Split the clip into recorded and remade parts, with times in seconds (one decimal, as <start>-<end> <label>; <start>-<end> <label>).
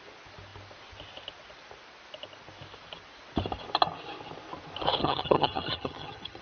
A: 0.0-5.0 recorded; 5.0-6.4 remade